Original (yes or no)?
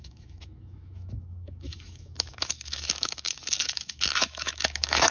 no